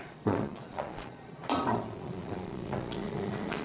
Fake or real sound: fake